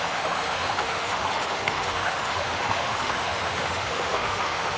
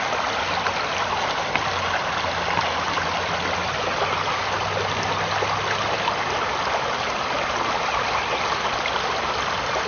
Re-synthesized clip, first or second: first